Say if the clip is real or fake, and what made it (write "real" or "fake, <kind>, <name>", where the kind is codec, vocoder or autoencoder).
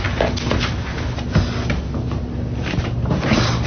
real